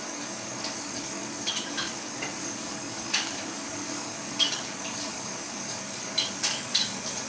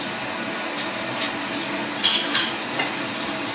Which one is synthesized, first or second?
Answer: first